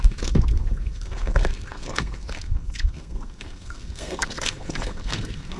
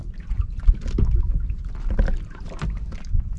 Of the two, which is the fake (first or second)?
first